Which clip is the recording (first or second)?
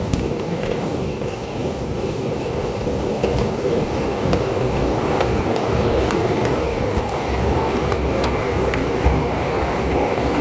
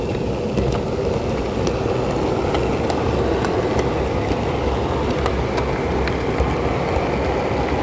second